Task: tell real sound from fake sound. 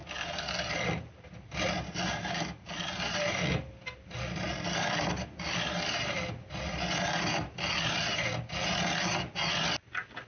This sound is real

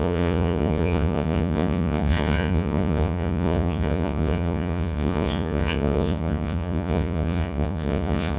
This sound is fake